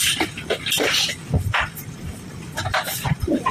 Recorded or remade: recorded